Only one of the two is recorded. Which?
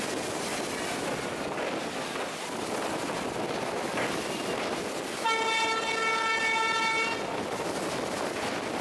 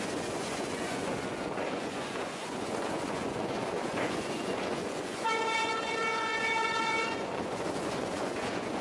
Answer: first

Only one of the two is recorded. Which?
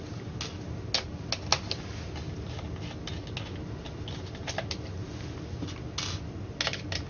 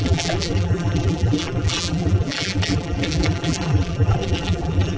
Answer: first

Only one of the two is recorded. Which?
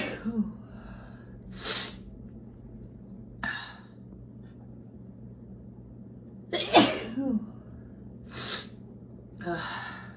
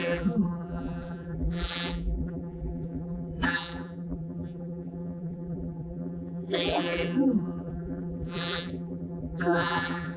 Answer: first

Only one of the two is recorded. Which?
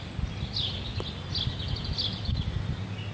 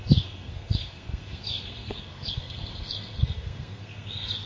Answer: first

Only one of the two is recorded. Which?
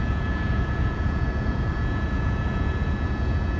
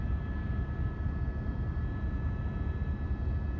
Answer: second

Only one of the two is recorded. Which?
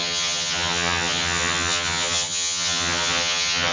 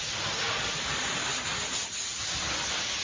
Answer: second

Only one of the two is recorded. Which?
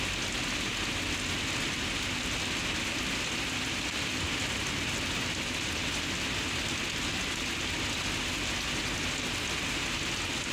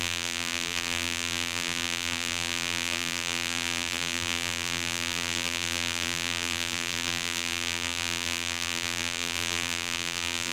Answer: first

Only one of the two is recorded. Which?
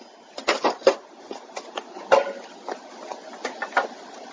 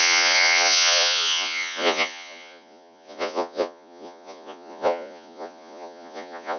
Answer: first